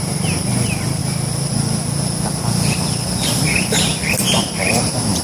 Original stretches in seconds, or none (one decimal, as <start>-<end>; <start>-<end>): 1.0-4.1